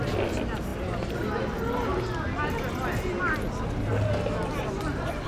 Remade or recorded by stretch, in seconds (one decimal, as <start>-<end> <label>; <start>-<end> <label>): 0.0-5.3 recorded